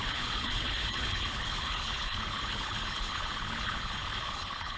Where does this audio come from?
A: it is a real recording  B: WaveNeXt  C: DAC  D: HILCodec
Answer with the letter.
D